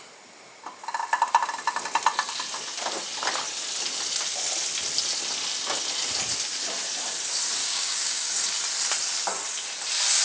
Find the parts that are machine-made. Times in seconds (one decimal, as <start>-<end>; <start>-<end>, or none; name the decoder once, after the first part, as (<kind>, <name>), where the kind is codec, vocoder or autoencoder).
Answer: 7.6-8.3 (codec, DAC)